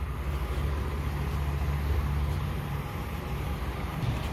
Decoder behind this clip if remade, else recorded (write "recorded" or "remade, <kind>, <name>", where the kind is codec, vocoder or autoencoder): recorded